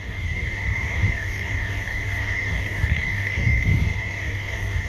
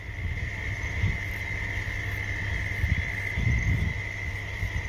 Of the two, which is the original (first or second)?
second